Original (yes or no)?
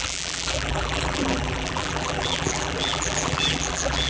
no